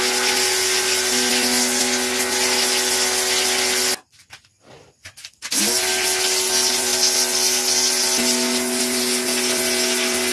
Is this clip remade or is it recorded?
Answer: recorded